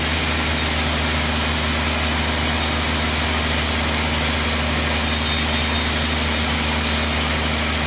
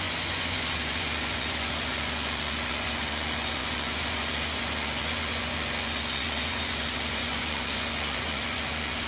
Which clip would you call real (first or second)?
first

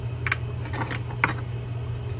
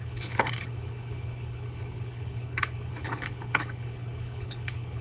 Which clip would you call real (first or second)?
first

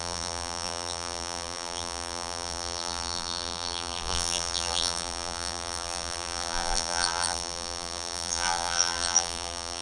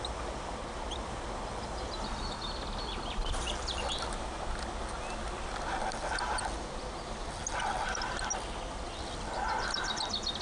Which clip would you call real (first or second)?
second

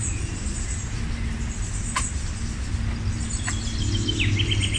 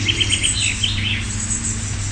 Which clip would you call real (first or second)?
second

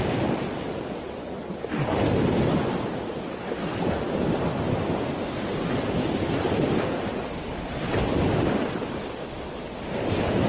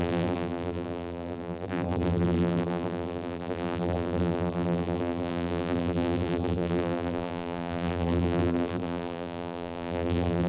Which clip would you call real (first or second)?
first